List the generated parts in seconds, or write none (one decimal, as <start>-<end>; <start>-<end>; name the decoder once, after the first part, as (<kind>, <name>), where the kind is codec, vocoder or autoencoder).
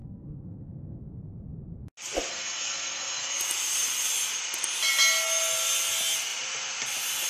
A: 0.0-1.0 (codec, SNAC); 2.3-3.4